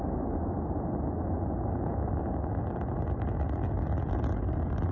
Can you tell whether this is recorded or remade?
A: recorded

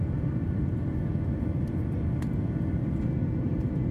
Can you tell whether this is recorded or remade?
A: recorded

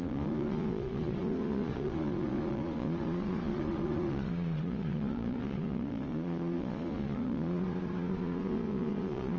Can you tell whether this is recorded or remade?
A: remade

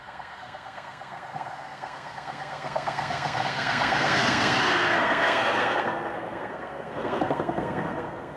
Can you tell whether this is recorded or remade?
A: remade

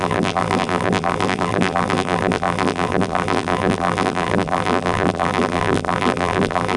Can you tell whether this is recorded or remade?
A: remade